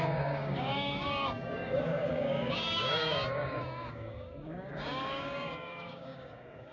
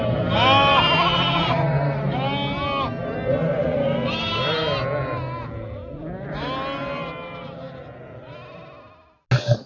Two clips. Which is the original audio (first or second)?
second